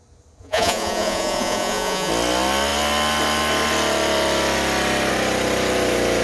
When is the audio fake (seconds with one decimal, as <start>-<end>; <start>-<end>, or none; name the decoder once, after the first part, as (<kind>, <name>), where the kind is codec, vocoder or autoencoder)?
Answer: 0.4-2.1 (vocoder, Vocos)